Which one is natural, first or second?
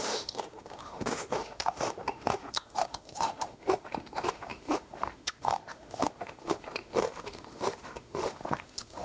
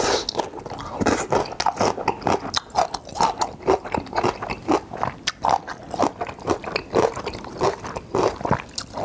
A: second